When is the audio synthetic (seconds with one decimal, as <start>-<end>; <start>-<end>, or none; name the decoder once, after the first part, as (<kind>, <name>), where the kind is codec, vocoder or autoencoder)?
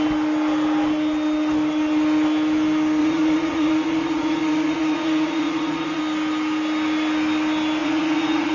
3.0-6.0 (vocoder, Vocos); 7.8-8.5